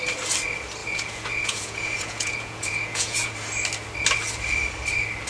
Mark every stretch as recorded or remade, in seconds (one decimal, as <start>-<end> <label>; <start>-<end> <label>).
0.0-0.8 recorded; 0.8-3.3 remade; 3.3-5.3 recorded